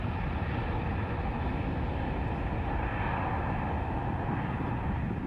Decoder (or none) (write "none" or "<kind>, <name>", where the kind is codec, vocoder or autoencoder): none